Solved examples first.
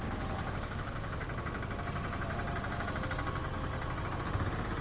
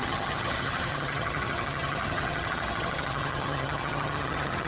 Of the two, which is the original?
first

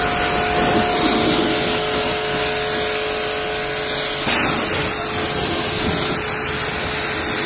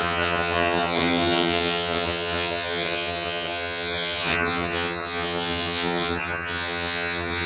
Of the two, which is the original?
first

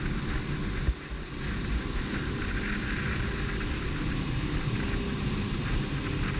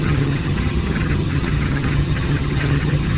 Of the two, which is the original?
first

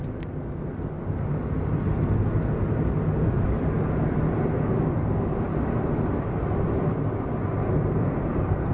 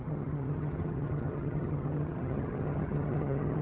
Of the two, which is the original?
first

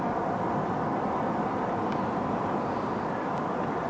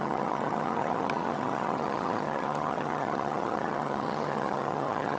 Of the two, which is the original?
first